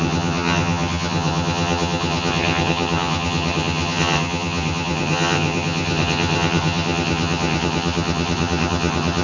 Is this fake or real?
fake